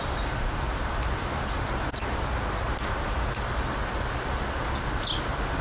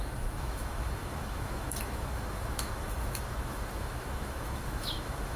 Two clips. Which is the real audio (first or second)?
first